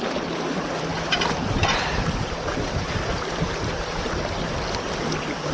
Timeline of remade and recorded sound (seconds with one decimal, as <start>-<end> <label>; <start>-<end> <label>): 0.0-0.9 recorded; 0.9-4.2 remade; 4.2-5.5 recorded